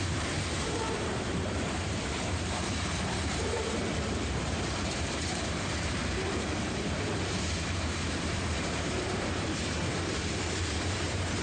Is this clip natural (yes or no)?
no